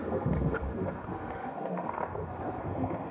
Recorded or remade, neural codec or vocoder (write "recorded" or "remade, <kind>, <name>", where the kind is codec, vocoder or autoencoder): remade, codec, SNAC